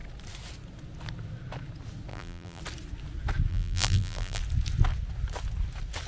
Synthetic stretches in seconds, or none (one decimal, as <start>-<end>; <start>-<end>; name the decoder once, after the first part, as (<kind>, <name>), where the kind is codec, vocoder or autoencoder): 2.1-2.6 (vocoder, BigVGAN v2); 3.5-4.4

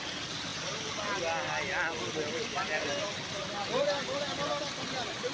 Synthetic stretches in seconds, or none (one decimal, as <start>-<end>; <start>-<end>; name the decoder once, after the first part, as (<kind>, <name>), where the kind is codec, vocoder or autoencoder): none